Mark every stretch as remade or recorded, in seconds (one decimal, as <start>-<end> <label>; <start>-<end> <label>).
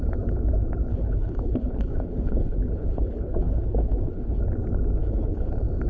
0.0-0.9 recorded; 0.9-4.4 remade; 4.4-5.0 recorded; 5.0-5.5 remade; 5.5-5.9 recorded